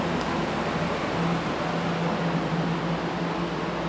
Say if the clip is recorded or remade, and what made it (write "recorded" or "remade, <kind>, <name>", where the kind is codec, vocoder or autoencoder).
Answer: recorded